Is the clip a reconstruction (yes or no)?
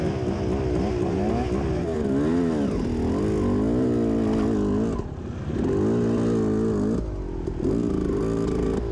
no